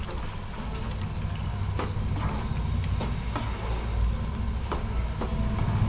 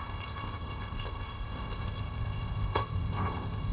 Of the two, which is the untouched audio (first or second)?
first